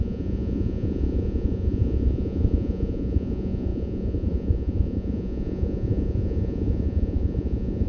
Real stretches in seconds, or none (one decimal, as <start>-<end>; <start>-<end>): none